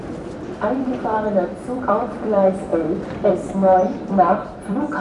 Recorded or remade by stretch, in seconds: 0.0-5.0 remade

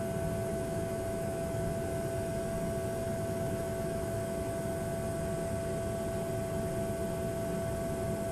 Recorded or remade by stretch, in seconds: 0.0-0.5 recorded; 0.5-1.7 remade; 1.7-3.0 recorded; 3.0-4.5 remade; 4.5-8.3 recorded

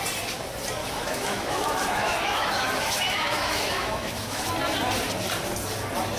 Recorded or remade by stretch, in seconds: 0.0-0.8 recorded; 0.8-4.5 remade; 4.5-6.2 recorded

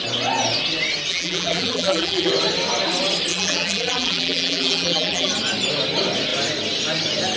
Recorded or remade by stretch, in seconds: 0.0-1.1 recorded; 1.1-2.3 remade; 2.3-3.3 recorded; 3.3-5.3 remade; 5.3-7.4 recorded

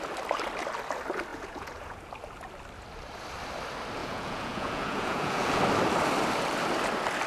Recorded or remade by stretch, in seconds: 0.0-1.3 recorded; 1.3-2.1 remade; 2.1-4.0 recorded; 4.0-5.6 remade; 5.6-7.3 recorded

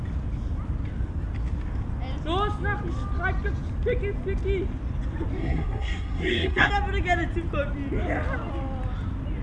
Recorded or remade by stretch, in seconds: 0.0-5.4 recorded; 5.4-6.7 remade; 6.7-9.4 recorded

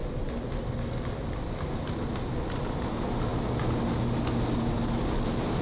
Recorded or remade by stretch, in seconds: 0.0-5.6 recorded

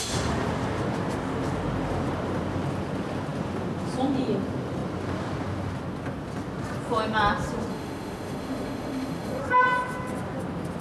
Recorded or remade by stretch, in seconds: 0.0-7.7 recorded; 7.7-9.4 remade; 9.4-10.8 recorded